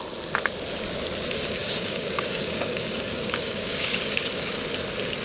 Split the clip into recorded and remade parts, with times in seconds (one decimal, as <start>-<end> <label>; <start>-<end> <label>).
0.0-1.6 recorded; 1.6-4.6 remade; 4.6-5.2 recorded